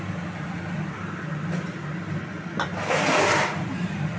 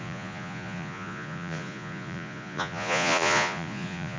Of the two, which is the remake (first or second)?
second